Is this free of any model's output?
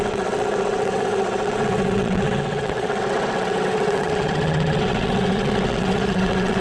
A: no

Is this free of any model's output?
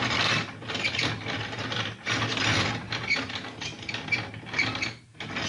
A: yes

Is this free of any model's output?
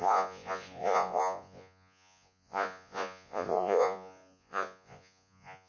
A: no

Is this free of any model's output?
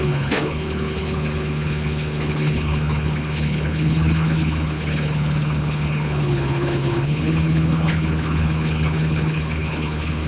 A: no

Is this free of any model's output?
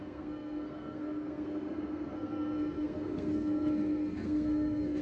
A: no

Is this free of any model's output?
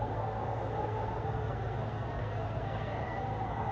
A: no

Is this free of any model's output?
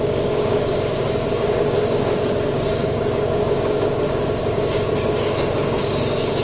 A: no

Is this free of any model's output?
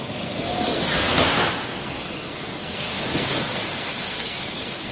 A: no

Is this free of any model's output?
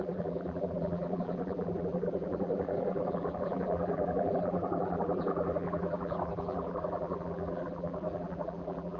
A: no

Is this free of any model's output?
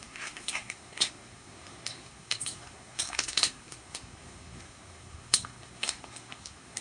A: no